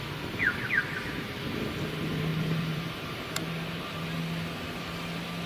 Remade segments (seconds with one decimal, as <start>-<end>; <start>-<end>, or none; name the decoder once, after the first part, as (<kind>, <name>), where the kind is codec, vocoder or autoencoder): 2.3-4.0 (vocoder, BigVGAN v2)